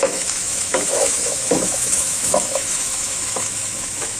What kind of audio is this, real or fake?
fake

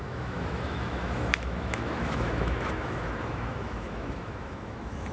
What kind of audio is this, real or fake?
fake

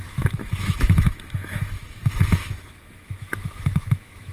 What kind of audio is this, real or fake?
fake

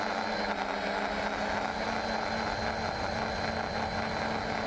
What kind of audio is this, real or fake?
real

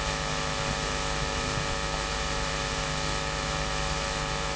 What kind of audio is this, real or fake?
fake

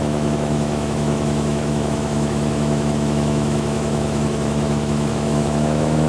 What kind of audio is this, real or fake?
fake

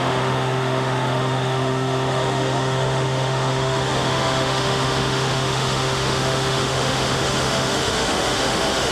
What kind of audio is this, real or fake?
fake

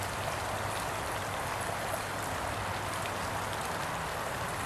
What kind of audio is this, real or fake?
real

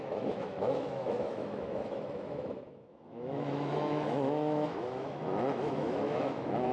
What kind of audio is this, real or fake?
fake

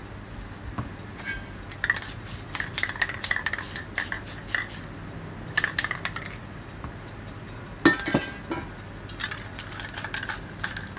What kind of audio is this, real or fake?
real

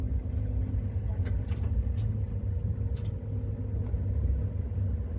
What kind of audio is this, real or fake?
real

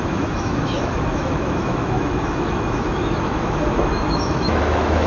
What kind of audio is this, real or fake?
fake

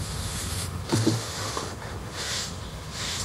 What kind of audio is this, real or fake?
fake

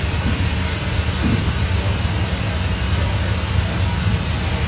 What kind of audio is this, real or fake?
real